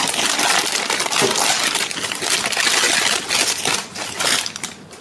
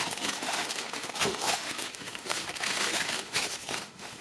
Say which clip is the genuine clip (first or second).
first